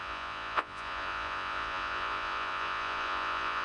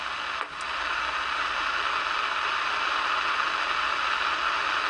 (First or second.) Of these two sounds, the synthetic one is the first